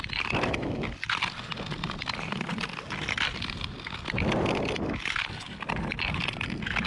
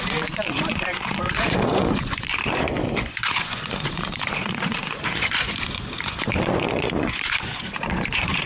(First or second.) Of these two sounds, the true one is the first